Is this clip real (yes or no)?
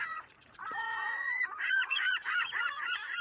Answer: no